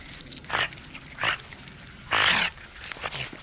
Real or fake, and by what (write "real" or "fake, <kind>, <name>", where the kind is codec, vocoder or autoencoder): real